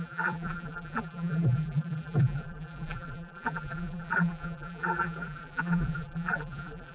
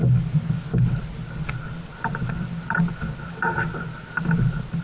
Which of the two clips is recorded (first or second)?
second